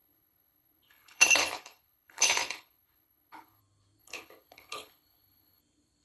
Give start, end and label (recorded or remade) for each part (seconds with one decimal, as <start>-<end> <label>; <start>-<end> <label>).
0.0-3.6 remade; 3.6-4.0 recorded; 4.0-5.6 remade; 5.6-6.0 recorded